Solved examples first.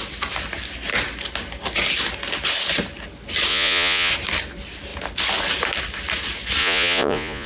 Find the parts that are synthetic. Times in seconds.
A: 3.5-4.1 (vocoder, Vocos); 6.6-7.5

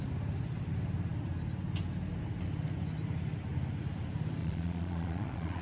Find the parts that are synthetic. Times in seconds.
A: 4.4-5.6 (vocoder, Vocos)

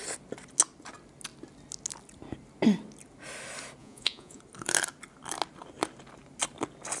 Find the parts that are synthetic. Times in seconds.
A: 3.8-4.4 (vocoder, Vocos)

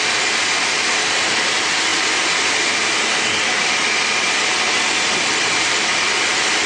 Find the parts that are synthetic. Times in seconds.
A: none

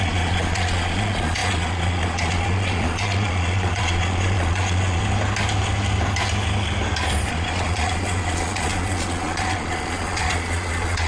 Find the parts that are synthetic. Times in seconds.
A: 0.0-5.0 (vocoder, Vocos); 7.3-11.1

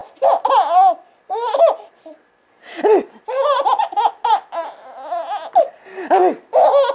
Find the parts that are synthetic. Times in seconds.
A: none

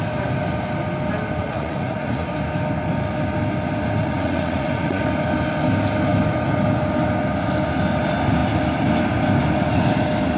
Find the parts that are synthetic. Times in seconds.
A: 1.4-2.3 (vocoder, Vocos); 4.0-5.0